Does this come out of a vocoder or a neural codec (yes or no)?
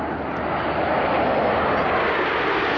no